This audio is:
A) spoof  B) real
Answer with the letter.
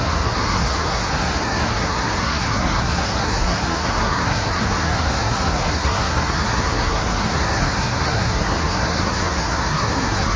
A